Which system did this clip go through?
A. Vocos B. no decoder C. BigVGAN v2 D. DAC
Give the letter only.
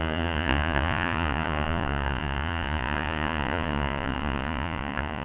A